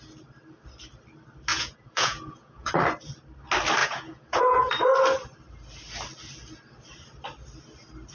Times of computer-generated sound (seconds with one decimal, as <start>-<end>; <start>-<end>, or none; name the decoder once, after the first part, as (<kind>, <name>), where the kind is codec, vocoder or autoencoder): 1.5-2.7 (vocoder, Vocos); 3.8-4.7